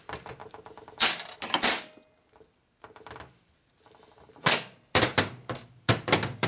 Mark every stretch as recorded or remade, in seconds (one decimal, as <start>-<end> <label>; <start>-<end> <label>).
0.0-6.5 recorded

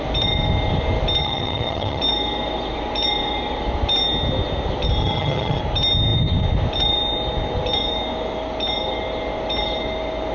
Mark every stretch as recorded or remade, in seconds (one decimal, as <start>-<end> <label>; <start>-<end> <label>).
0.0-1.2 recorded; 1.2-2.0 remade; 2.0-5.0 recorded; 5.0-5.6 remade; 5.6-10.3 recorded

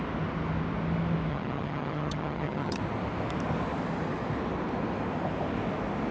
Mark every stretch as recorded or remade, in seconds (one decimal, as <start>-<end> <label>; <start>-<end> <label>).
0.0-1.3 recorded; 1.3-2.8 remade; 2.8-6.1 recorded

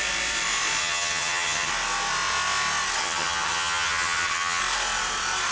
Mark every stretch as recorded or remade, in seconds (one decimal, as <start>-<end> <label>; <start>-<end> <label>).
0.0-0.8 recorded; 0.8-1.7 remade; 1.7-3.0 recorded; 3.0-4.6 remade; 4.6-5.5 recorded

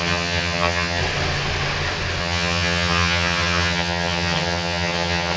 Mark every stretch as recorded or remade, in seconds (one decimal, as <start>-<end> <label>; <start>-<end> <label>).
0.0-1.0 remade; 1.0-2.2 recorded; 2.2-5.4 remade

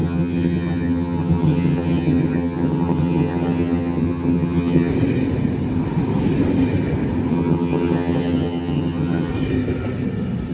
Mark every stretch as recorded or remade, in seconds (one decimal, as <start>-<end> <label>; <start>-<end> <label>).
0.0-4.9 remade; 4.9-7.3 recorded; 7.3-9.3 remade; 9.3-10.5 recorded

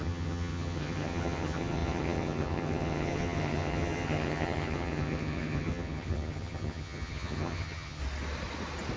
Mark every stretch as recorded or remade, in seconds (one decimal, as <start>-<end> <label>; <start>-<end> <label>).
0.0-8.0 remade; 8.0-9.0 recorded

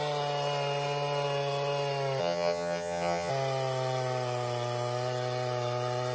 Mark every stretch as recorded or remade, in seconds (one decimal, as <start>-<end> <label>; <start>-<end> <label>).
0.0-2.2 recorded; 2.2-3.3 remade; 3.3-6.1 recorded